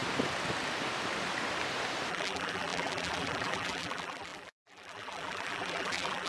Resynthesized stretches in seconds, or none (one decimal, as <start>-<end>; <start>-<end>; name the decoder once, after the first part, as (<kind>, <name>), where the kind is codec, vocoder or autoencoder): 2.1-6.3 (vocoder, BigVGAN v2)